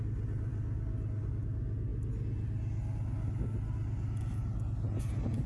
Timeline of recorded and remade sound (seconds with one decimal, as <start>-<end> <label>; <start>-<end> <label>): 0.0-5.5 recorded